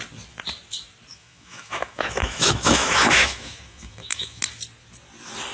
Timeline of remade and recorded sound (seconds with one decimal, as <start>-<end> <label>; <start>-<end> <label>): 0.0-1.1 recorded; 1.1-4.4 remade; 4.4-5.5 recorded